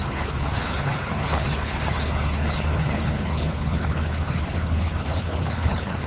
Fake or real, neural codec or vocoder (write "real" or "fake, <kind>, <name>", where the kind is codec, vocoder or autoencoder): fake, codec, HILCodec